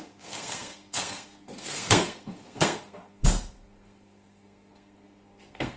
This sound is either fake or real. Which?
fake